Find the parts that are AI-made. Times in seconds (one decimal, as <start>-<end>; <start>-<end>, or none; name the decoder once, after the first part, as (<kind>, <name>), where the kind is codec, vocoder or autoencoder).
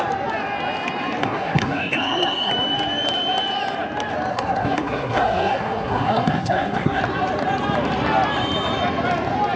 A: 1.2-2.5 (codec, SNAC); 4.3-7.0